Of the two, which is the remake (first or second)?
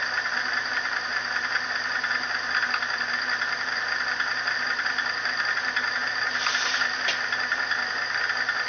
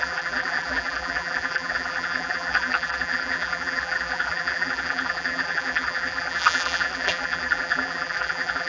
second